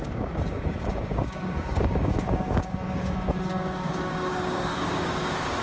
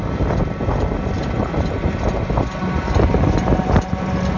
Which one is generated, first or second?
first